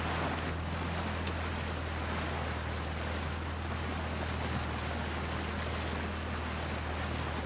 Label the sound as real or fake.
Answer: real